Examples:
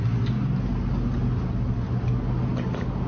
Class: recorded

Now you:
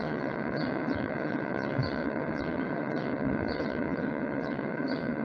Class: remade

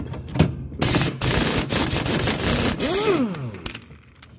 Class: recorded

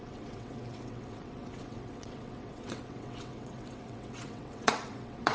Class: remade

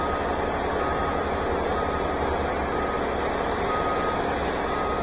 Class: recorded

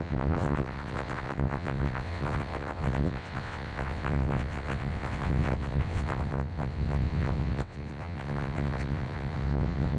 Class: remade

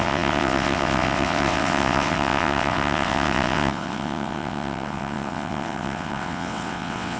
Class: remade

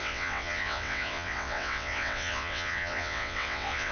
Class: remade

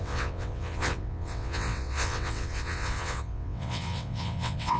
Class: remade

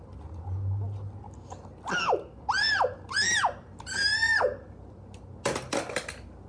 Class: recorded